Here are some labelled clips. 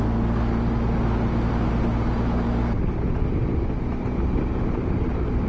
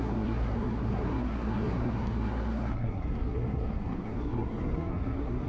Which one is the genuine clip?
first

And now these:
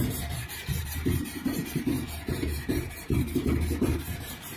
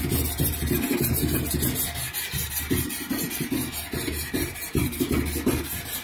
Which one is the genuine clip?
second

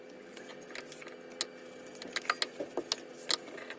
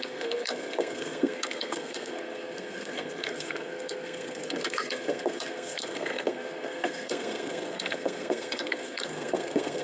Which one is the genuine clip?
first